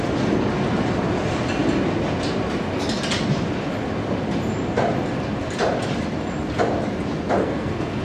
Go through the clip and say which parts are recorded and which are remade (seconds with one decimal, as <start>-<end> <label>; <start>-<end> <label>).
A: 0.0-7.4 recorded; 7.4-8.0 remade